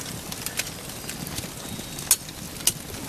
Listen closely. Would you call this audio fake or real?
real